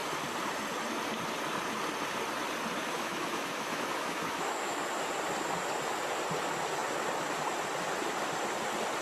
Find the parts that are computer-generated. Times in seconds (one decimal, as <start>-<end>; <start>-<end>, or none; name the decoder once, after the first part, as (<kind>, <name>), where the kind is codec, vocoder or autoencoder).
2.8-4.8 (autoencoder, DAC-VAE)